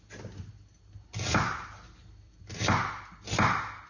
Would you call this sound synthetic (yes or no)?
no